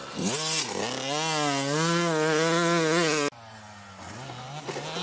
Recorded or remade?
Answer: recorded